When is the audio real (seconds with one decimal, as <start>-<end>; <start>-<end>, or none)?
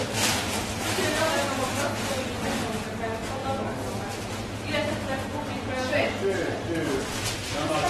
0.0-7.9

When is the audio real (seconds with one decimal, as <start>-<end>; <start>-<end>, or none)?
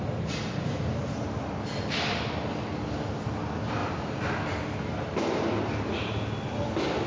0.0-3.8; 4.3-7.1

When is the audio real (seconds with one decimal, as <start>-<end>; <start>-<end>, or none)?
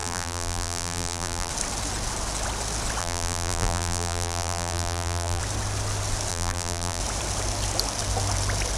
1.5-3.0; 5.4-6.3; 7.0-8.8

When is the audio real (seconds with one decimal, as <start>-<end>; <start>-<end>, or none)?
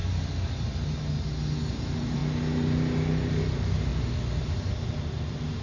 0.0-1.7; 2.2-3.3; 3.9-4.4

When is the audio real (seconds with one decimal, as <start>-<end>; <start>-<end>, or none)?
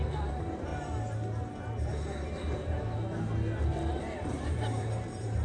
0.7-3.9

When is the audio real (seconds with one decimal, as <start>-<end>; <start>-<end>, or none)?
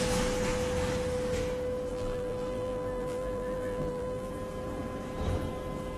0.0-1.9; 4.3-6.0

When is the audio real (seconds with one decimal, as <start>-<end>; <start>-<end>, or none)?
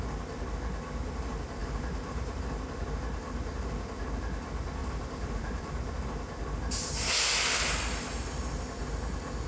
0.0-1.6; 2.4-4.8; 5.7-9.5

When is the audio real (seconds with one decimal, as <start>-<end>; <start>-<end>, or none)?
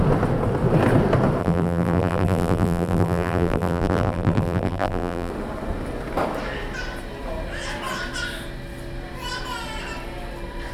0.0-1.4; 5.3-10.7